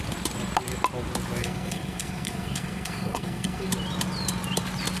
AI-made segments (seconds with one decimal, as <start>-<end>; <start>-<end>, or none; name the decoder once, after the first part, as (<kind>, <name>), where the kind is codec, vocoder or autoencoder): 1.4-3.7 (codec, SNAC)